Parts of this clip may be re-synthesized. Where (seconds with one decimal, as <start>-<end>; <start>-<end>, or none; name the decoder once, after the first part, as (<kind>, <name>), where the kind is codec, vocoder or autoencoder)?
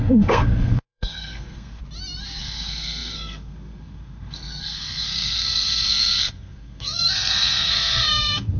0.0-1.8 (codec, SNAC); 2.4-8.6